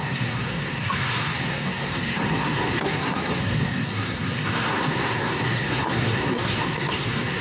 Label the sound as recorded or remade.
remade